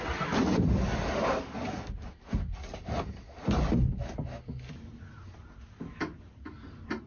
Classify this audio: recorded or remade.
recorded